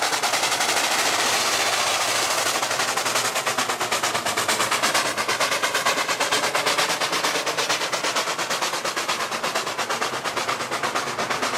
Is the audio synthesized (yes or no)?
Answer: no